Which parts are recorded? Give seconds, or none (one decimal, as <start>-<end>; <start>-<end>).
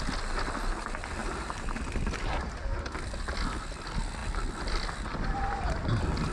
0.0-6.3